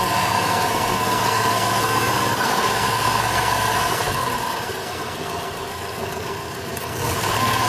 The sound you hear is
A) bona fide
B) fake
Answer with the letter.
B